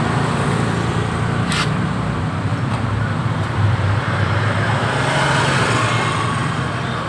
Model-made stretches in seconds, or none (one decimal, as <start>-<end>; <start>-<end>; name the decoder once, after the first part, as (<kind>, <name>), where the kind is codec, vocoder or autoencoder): 2.5-5.0 (vocoder, BigVGAN v2)